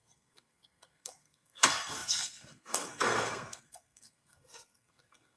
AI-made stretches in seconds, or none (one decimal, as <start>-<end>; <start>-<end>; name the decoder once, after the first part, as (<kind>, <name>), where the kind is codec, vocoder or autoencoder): 0.0-5.4 (codec, SNAC)